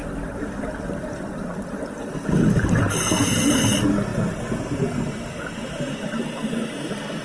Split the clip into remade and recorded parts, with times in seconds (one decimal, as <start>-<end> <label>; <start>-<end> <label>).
0.0-7.2 recorded